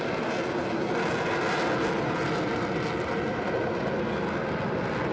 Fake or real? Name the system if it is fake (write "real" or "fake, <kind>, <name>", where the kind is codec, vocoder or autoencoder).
real